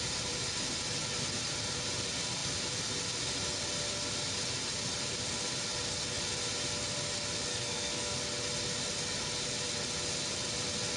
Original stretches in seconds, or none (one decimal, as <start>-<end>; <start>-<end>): 0.0-7.5; 8.2-11.0